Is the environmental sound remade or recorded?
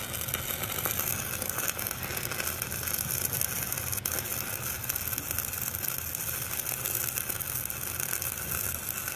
recorded